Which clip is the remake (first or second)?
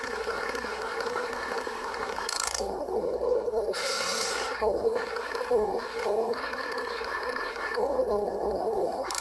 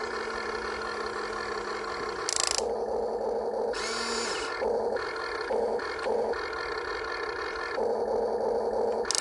first